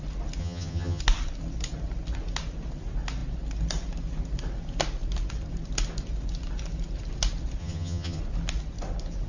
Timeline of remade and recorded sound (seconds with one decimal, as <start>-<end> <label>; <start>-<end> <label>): 0.0-0.4 recorded; 0.4-1.0 remade; 1.0-7.6 recorded; 7.6-8.2 remade; 8.2-9.3 recorded